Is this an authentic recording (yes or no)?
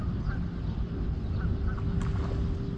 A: yes